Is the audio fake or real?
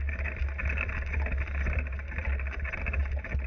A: real